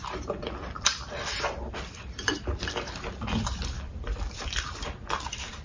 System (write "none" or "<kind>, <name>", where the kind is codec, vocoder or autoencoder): vocoder, BigVGAN v2